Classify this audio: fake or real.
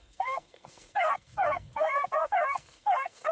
fake